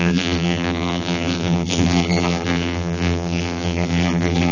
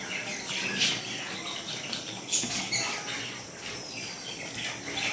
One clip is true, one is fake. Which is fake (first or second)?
first